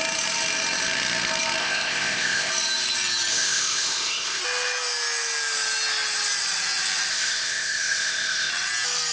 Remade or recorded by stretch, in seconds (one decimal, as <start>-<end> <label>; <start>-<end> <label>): 0.0-1.6 recorded; 1.6-2.5 remade; 2.5-3.3 recorded; 3.3-4.4 remade; 4.4-7.1 recorded; 7.1-8.5 remade; 8.5-9.1 recorded